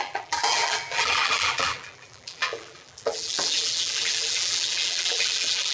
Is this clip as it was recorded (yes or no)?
no